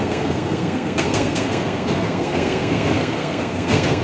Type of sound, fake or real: fake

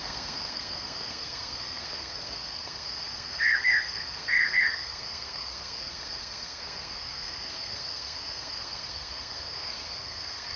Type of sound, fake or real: fake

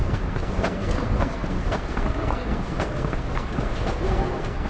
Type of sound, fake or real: fake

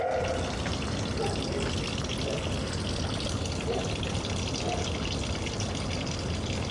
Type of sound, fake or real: real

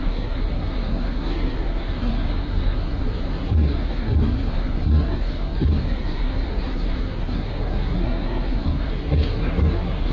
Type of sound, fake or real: fake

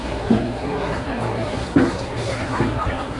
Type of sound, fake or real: fake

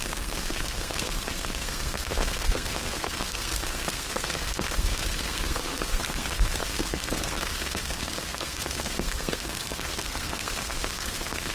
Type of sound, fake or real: fake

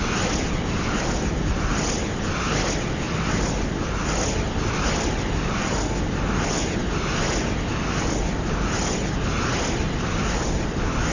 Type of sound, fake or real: real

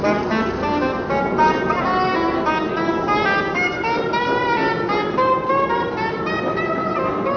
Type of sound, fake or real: real